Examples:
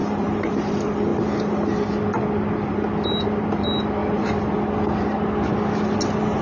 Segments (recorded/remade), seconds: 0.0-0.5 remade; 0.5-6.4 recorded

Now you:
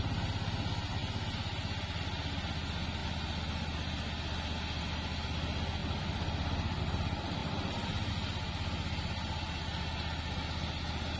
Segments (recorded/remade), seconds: 0.0-5.8 recorded; 5.8-6.8 remade; 6.8-7.4 recorded; 7.4-8.1 remade; 8.1-11.2 recorded

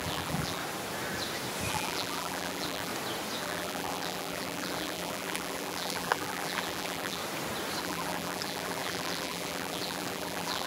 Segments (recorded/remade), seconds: 0.0-0.6 remade; 0.6-1.7 recorded; 1.7-2.9 remade; 2.9-3.4 recorded; 3.4-7.2 remade; 7.2-7.8 recorded; 7.8-10.7 remade

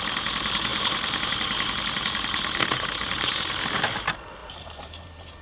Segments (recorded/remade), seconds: 0.0-0.7 recorded; 0.7-3.9 remade; 3.9-4.4 recorded; 4.4-5.4 remade

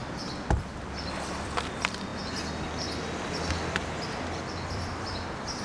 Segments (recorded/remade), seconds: 0.0-1.7 recorded; 1.7-2.1 remade; 2.1-4.4 recorded; 4.4-5.6 remade

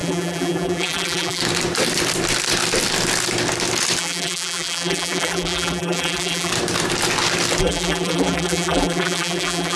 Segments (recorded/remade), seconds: 0.0-1.4 remade; 1.4-4.0 recorded; 4.0-6.5 remade; 6.5-7.6 recorded; 7.6-9.8 remade

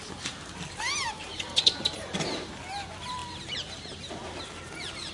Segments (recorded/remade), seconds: 0.0-1.2 recorded; 1.2-2.6 remade; 2.6-5.1 recorded

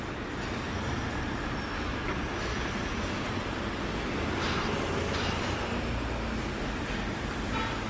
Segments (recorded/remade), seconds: 0.0-1.7 recorded; 1.7-3.1 remade; 3.1-7.9 recorded